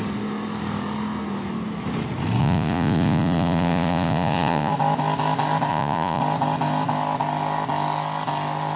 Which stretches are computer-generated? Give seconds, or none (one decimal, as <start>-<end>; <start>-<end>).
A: 2.4-4.7; 5.7-6.2